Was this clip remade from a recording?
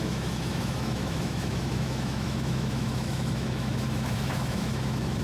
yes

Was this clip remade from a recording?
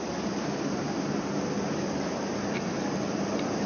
no